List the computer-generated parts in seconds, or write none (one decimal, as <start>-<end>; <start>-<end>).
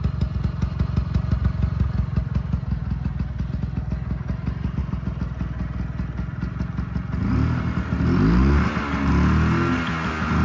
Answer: none